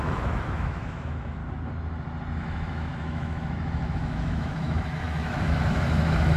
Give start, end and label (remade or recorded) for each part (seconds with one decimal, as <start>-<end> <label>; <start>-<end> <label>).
0.0-1.4 remade; 1.4-2.4 recorded; 2.4-6.4 remade